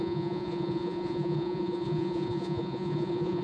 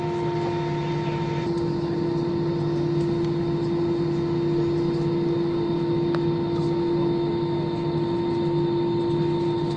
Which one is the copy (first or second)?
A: first